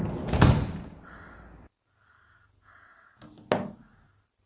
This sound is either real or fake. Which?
real